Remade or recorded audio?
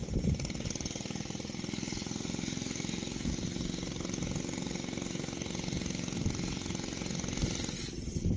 recorded